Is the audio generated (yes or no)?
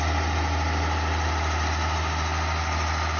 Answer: no